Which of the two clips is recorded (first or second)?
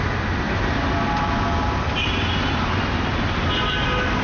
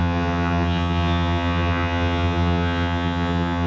first